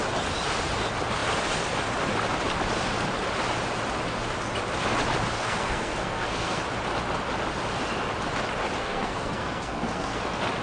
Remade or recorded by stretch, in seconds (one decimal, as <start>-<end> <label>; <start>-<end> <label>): 0.0-5.3 recorded; 5.3-6.6 remade; 6.6-8.8 recorded; 8.8-10.2 remade; 10.2-10.6 recorded